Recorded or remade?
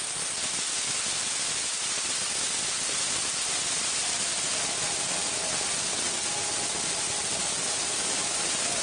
recorded